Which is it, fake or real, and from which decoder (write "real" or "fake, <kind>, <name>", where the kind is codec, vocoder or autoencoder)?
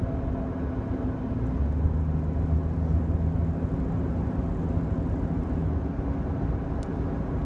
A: real